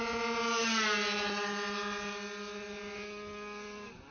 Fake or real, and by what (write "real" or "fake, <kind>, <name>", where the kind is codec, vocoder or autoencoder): real